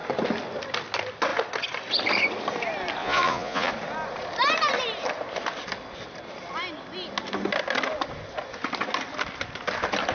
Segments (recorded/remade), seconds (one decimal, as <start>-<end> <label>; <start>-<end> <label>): 0.0-3.0 recorded; 3.0-3.7 remade; 3.7-10.1 recorded